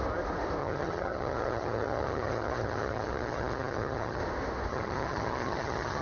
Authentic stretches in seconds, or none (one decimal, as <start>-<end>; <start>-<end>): 0.0-0.6; 4.2-4.7